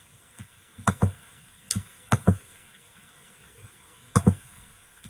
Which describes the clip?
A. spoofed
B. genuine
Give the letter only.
A